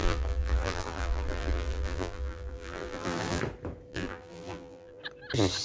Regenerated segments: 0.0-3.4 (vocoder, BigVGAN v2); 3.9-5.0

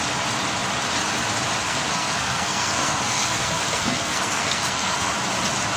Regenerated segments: 1.6-5.1 (codec, SNAC)

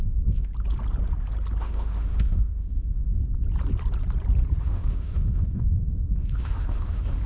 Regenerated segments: 0.0-0.5 (autoencoder, DAC-VAE); 1.6-3.2; 4.6-7.3

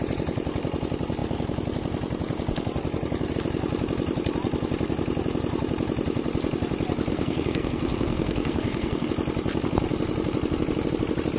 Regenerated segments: 7.1-9.1 (codec, SNAC)